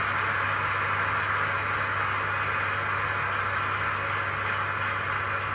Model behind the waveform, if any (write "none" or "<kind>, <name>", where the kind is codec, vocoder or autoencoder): none